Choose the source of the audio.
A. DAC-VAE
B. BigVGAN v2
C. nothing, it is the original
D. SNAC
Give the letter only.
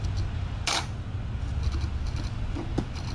C